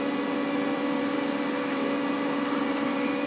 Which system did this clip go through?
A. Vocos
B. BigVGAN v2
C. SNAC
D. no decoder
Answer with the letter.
B